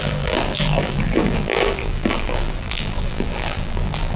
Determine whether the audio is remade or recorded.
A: remade